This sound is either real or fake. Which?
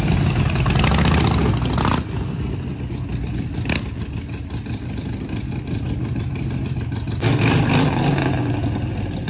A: real